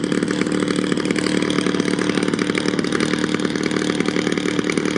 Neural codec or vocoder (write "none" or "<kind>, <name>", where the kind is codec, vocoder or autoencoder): none